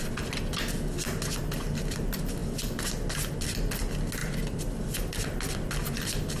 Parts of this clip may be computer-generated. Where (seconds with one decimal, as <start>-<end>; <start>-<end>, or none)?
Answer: 4.2-4.9